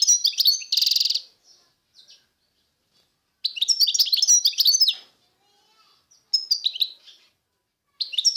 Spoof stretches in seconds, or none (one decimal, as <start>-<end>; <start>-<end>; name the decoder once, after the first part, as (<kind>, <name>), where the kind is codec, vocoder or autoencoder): none